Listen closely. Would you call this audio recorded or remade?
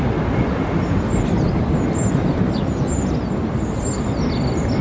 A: recorded